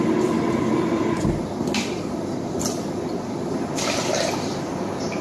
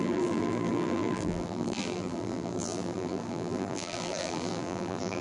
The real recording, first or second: first